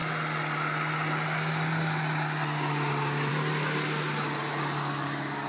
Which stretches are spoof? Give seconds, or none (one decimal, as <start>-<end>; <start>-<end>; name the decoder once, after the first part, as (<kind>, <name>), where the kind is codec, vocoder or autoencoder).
none